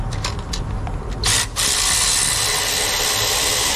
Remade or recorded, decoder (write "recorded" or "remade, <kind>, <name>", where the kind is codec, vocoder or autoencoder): recorded